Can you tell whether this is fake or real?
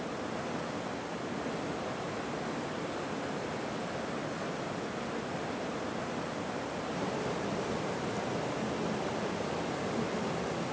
real